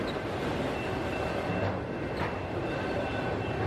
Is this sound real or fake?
real